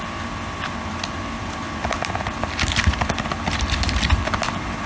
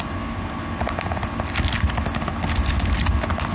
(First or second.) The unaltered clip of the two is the second